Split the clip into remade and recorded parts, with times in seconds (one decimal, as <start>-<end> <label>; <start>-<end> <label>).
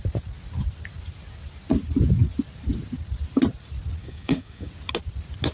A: 0.0-4.0 recorded; 4.0-4.7 remade; 4.7-5.5 recorded